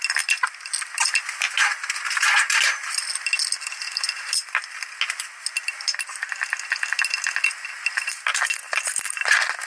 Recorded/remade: recorded